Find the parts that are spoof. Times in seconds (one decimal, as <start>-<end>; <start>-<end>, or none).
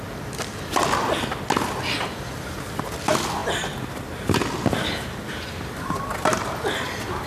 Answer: none